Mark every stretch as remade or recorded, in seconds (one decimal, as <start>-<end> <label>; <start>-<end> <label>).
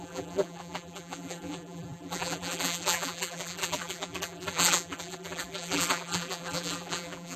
0.0-7.4 remade